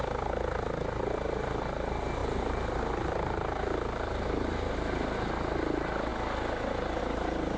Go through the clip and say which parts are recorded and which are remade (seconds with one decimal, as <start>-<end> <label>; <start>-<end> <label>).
0.0-7.6 recorded